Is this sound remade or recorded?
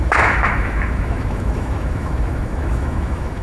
remade